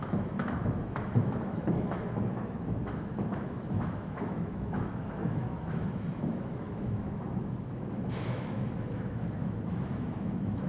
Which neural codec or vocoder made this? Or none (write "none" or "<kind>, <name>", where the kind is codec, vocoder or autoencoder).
autoencoder, DAC-VAE